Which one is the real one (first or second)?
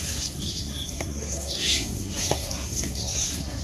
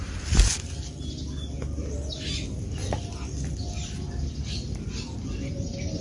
second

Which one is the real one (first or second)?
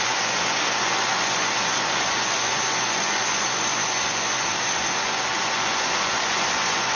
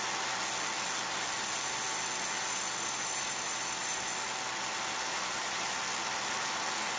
second